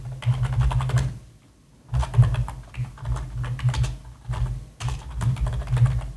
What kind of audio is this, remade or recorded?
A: recorded